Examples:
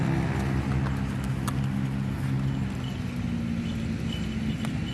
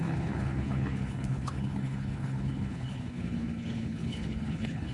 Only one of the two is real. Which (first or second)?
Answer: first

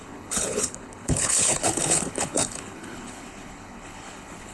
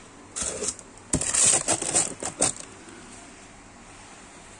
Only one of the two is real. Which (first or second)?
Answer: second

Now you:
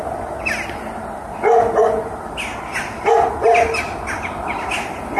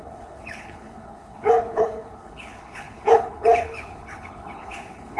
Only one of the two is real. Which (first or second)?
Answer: first